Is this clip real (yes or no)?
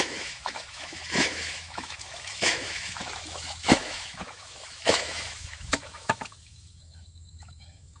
no